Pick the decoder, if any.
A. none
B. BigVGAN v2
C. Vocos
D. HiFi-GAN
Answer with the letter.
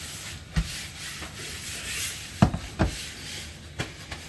B